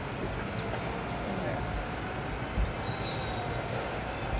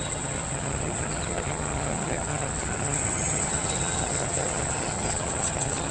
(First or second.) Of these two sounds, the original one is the first